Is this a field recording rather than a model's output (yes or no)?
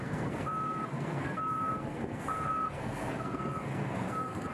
no